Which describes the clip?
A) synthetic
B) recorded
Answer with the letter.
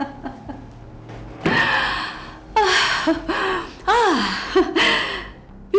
B